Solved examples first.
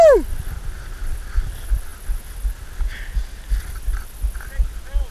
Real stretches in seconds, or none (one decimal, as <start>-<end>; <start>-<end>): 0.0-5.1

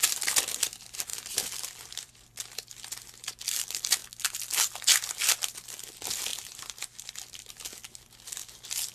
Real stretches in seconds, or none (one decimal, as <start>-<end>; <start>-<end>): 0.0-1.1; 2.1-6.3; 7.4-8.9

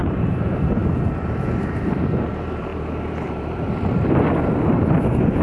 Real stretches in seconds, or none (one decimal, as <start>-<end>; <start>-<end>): 0.8-1.8

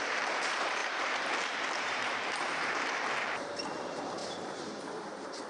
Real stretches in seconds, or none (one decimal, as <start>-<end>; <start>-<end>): none

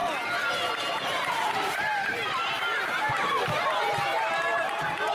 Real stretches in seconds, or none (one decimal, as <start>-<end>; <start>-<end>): 0.0-1.2; 4.3-5.1

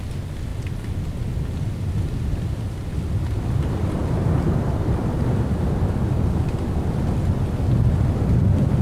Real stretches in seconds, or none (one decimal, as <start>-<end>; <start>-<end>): 0.0-0.5; 3.0-4.0; 7.0-8.8